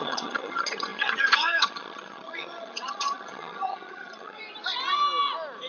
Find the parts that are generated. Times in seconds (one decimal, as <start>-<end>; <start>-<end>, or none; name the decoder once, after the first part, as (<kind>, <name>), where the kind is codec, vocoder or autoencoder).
0.0-4.4 (vocoder, HiFi-GAN)